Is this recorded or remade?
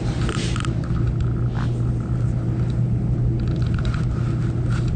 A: recorded